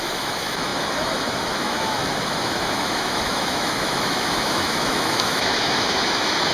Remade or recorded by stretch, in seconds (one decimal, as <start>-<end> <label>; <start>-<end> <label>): 0.0-6.5 remade